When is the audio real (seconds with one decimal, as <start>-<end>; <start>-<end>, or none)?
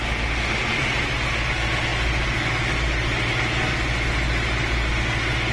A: 0.0-5.5